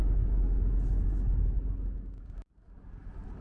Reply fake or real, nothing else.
real